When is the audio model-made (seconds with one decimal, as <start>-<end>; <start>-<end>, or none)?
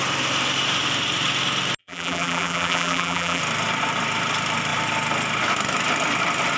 1.8-3.4